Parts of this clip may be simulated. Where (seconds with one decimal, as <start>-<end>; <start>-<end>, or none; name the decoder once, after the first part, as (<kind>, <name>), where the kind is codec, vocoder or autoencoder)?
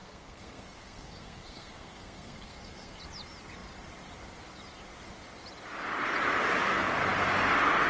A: 0.0-3.0 (codec, SNAC)